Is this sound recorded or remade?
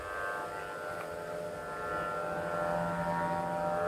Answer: recorded